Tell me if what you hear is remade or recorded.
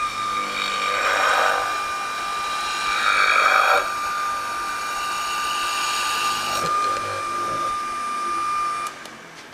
recorded